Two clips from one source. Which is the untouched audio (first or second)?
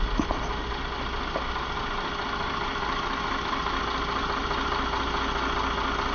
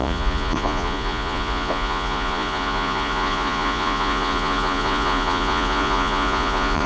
first